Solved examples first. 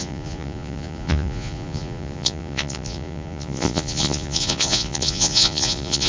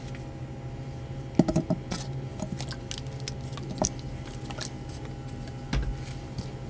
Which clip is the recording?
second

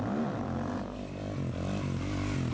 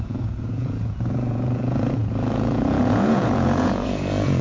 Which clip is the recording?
first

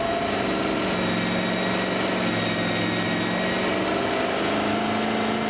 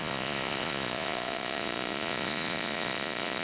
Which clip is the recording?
first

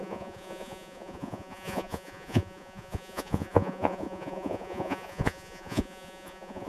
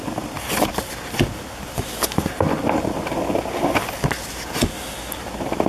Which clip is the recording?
second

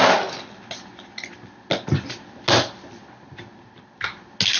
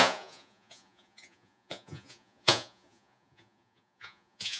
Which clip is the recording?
first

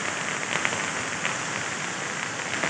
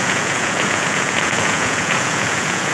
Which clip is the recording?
first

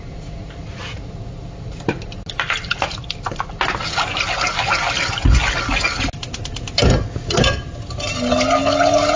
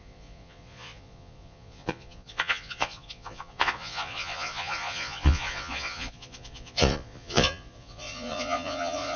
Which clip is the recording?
first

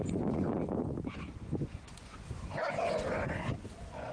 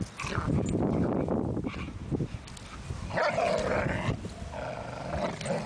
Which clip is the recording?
second